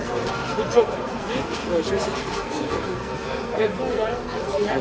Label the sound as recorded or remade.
remade